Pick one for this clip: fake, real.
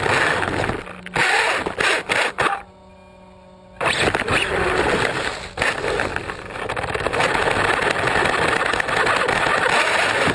real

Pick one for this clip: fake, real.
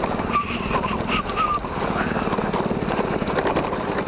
real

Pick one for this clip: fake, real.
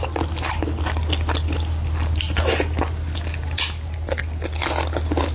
real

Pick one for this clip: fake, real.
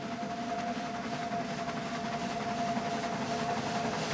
real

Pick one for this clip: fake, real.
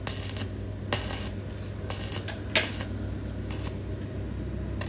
real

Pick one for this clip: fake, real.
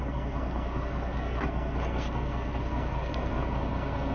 fake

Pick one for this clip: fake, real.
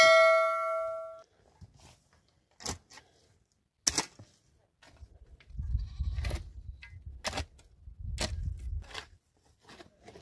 real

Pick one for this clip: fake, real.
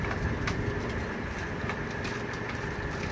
real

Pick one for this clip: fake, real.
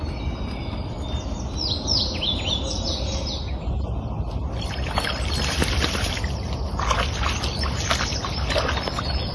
real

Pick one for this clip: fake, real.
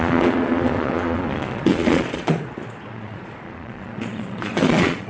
fake